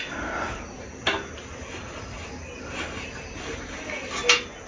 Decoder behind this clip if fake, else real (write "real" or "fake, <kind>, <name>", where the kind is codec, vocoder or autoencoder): real